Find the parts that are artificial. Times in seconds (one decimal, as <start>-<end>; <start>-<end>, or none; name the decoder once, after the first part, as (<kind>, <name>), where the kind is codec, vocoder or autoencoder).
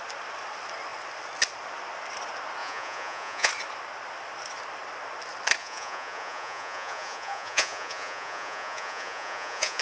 2.6-3.5 (vocoder, Vocos); 5.6-9.8